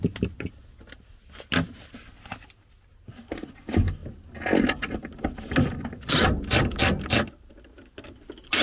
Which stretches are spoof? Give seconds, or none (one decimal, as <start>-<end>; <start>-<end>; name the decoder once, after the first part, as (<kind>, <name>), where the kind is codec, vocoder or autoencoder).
none